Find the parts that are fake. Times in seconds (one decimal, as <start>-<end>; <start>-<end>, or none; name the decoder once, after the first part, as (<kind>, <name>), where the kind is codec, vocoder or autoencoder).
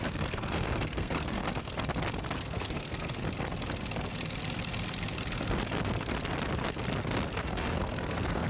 0.0-1.4 (codec, SNAC); 2.4-3.2; 7.4-8.5